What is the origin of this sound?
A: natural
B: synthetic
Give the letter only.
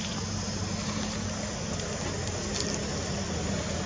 A